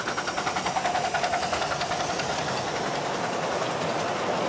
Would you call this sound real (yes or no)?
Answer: yes